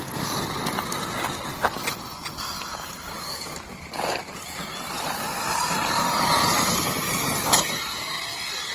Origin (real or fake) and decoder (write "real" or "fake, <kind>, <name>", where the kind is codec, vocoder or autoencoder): real